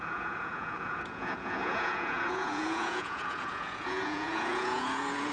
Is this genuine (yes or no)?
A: no